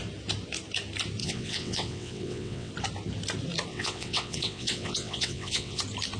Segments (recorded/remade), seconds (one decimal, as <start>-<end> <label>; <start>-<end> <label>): 0.0-1.2 recorded; 1.2-2.7 remade; 2.7-3.7 recorded; 3.7-5.8 remade; 5.8-6.2 recorded